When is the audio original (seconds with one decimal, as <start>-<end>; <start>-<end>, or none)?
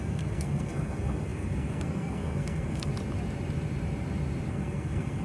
2.9-4.5